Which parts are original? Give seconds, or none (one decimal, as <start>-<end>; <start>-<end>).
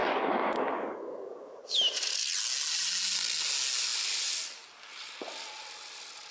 1.6-6.3